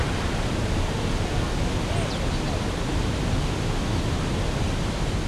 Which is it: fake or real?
real